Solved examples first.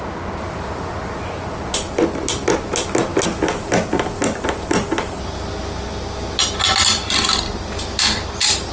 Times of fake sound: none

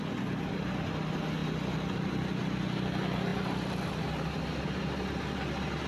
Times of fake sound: none

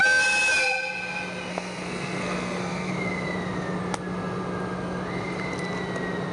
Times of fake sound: 1.5-2.9 (codec, SNAC)

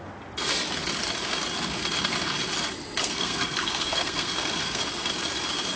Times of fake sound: 3.0-4.8 (codec, SNAC)

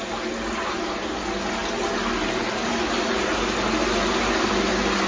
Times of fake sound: none

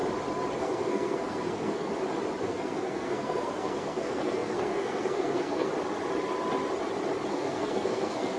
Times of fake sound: 0.6-1.9 (codec, SNAC); 2.4-5.7; 7.3-8.4

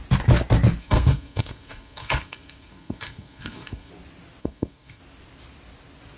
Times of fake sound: 0.8-3.9 (codec, SNAC); 4.4-5.0